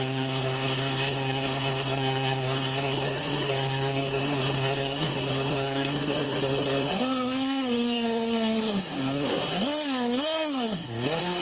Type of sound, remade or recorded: remade